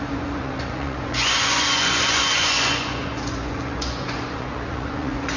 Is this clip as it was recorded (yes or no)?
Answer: no